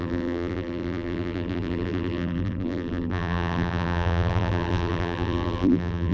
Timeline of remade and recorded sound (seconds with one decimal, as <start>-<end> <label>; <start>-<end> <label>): 0.0-6.1 remade